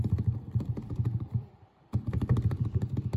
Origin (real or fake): fake